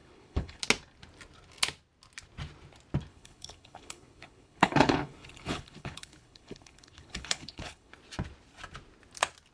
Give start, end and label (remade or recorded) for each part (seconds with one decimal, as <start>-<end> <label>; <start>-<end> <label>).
0.0-0.6 remade; 0.6-3.1 recorded; 3.1-7.9 remade; 7.9-9.5 recorded